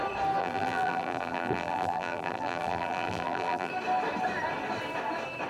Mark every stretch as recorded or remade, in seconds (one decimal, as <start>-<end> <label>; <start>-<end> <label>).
0.0-0.4 recorded; 0.4-3.7 remade; 3.7-5.5 recorded